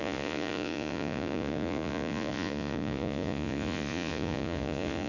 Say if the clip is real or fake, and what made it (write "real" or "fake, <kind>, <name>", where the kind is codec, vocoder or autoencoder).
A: fake, vocoder, Vocos